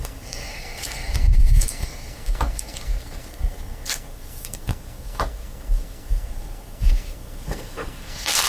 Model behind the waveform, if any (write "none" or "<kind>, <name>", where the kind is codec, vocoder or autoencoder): codec, SNAC